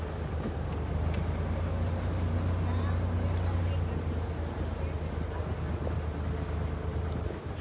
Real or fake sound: real